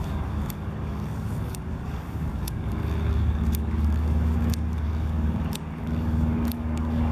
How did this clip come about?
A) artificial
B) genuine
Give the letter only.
A